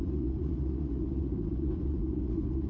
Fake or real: fake